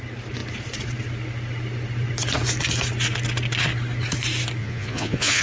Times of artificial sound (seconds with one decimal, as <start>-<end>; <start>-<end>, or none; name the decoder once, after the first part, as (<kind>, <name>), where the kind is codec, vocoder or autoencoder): 4.6-5.4 (vocoder, Vocos)